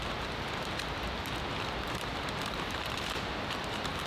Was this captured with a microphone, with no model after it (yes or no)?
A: no